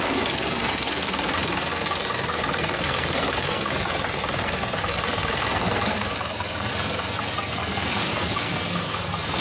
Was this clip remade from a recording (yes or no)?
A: yes